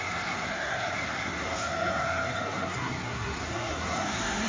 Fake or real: fake